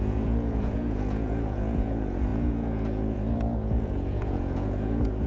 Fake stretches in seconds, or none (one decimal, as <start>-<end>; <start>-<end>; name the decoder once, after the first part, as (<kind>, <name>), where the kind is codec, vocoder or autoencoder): 0.0-5.3 (vocoder, Vocos)